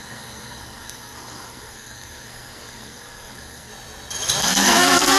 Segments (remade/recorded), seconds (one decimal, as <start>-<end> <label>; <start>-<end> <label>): 0.0-3.7 remade; 3.7-4.4 recorded; 4.4-5.2 remade